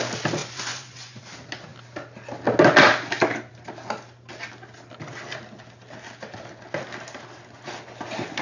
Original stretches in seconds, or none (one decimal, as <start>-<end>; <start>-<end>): 0.0-0.4; 1.2-8.4